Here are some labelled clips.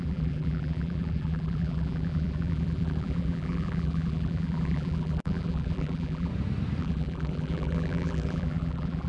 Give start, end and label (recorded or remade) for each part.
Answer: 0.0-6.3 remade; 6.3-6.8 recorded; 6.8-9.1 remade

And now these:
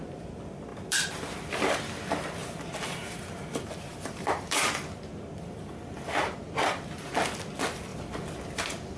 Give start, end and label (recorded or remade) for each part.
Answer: 0.0-0.7 recorded; 0.7-1.5 remade; 1.5-3.9 recorded; 3.9-7.1 remade; 7.1-9.0 recorded

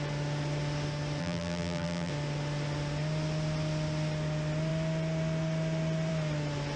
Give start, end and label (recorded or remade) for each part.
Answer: 0.0-1.2 recorded; 1.2-2.1 remade; 2.1-6.8 recorded